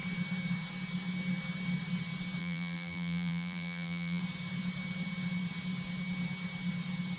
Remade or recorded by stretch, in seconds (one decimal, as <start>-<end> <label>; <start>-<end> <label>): 0.0-2.4 recorded; 2.4-4.2 remade; 4.2-7.2 recorded